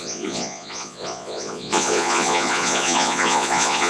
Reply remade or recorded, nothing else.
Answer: remade